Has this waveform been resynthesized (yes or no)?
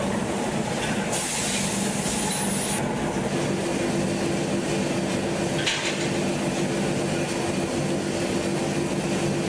no